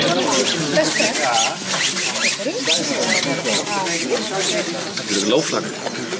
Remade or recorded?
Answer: recorded